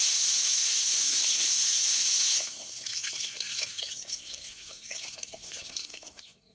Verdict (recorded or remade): remade